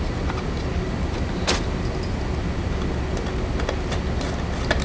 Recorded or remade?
recorded